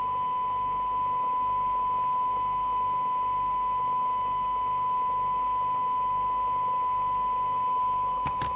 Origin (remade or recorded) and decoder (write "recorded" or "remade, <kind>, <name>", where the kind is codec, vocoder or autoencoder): recorded